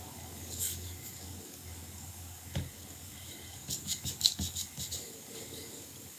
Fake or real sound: fake